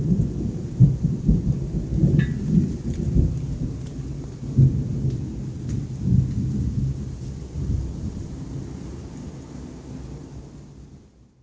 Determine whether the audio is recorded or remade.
recorded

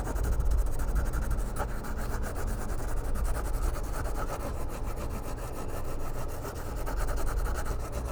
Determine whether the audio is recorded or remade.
recorded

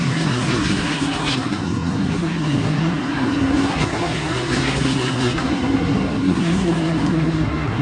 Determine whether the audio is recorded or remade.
remade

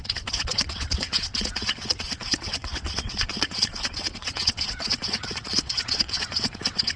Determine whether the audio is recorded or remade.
remade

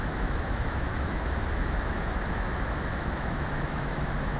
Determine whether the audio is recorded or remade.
remade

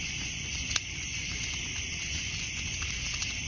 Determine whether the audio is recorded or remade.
remade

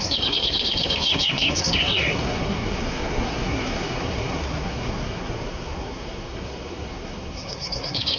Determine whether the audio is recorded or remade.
remade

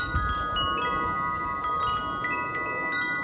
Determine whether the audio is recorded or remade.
recorded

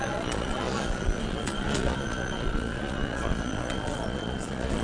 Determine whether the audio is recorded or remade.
remade